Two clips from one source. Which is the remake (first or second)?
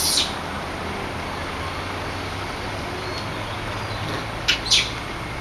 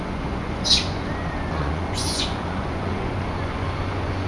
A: second